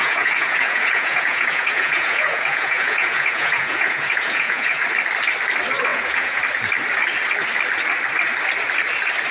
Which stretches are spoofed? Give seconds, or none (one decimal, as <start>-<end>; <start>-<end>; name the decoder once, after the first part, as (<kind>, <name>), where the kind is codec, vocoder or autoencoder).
0.0-4.8 (vocoder, Vocos); 5.9-6.4